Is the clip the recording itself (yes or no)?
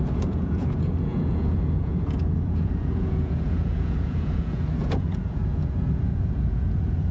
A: no